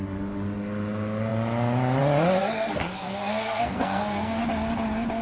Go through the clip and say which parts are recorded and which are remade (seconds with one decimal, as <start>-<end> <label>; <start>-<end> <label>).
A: 0.0-2.4 recorded; 2.4-4.4 remade; 4.4-5.2 recorded